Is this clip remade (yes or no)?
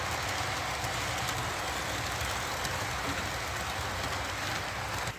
no